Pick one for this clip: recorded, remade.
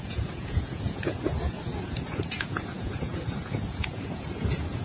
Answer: remade